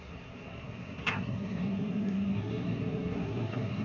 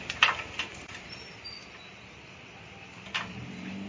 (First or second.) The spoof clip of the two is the first